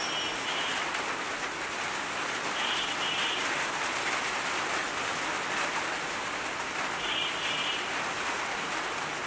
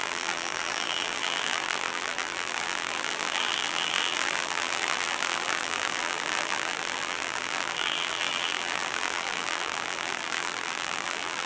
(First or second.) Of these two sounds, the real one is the first